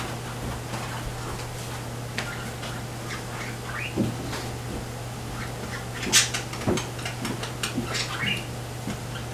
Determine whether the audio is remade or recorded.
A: recorded